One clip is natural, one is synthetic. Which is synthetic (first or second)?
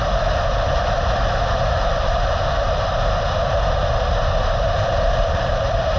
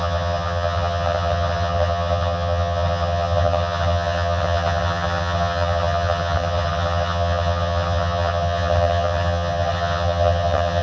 second